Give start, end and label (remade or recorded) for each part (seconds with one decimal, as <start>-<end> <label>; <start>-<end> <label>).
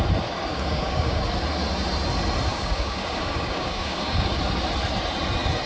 0.0-0.5 recorded; 0.5-1.2 remade; 1.2-2.5 recorded; 2.5-4.4 remade; 4.4-5.7 recorded